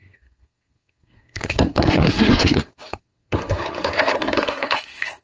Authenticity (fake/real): fake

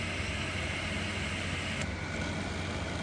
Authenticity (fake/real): real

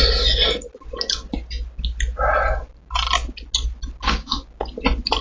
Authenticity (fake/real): real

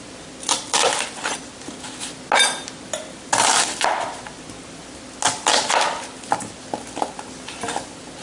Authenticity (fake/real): real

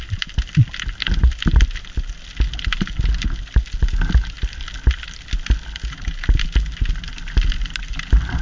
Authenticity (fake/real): real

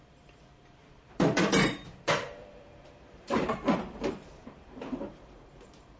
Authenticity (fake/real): fake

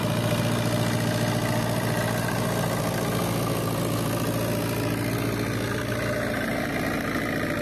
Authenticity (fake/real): real